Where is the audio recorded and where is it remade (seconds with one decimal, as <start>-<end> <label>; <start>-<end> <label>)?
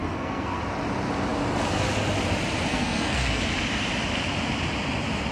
0.0-0.6 remade; 0.6-2.7 recorded; 2.7-3.4 remade; 3.4-5.3 recorded